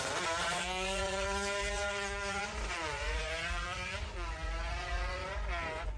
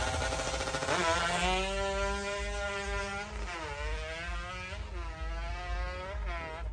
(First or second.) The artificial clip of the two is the first